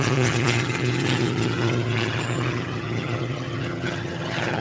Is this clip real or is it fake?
fake